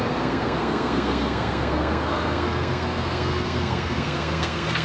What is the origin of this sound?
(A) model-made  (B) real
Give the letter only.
A